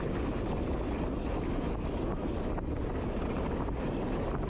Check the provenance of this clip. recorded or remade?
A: recorded